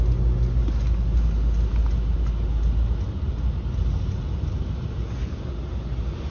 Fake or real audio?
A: real